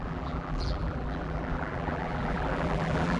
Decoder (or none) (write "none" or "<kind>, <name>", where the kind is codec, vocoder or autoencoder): vocoder, BigVGAN v2